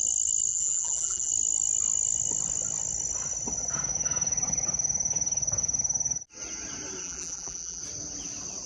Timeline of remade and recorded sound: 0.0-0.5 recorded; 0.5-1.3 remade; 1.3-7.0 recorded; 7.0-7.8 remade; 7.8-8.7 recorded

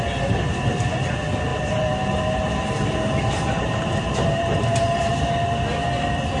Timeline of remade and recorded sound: 0.0-1.5 recorded; 1.5-5.3 remade; 5.3-6.4 recorded